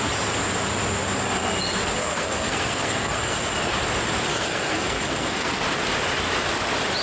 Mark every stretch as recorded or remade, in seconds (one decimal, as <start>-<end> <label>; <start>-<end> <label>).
0.0-2.0 recorded; 2.0-3.5 remade; 3.5-4.3 recorded; 4.3-5.6 remade; 5.6-7.0 recorded